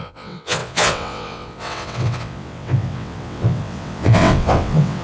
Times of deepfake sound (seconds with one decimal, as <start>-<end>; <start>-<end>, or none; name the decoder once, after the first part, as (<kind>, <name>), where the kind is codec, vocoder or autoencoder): 0.0-5.0 (vocoder, WaveNeXt)